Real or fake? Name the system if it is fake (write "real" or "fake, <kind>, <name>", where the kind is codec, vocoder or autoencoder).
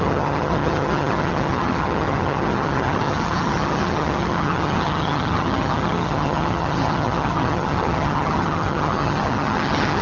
fake, vocoder, HiFi-GAN